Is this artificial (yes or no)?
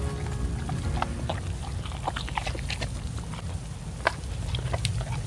no